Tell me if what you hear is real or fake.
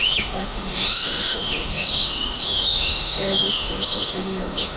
fake